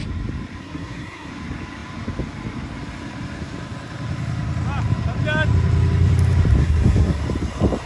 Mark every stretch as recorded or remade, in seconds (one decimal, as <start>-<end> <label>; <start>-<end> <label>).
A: 0.0-0.6 recorded; 0.6-1.3 remade; 1.3-6.6 recorded; 6.6-7.2 remade; 7.2-7.9 recorded